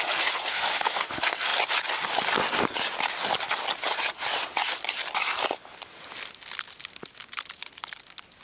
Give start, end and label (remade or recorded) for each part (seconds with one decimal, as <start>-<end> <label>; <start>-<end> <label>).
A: 0.0-0.5 recorded; 0.5-1.1 remade; 1.1-8.4 recorded